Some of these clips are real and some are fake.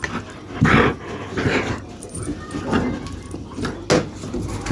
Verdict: real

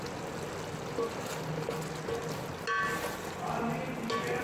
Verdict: real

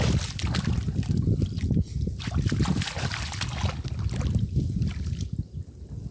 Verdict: real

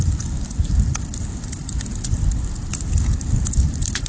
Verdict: real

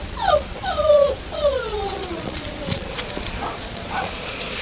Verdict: fake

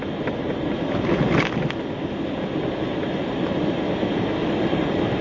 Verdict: real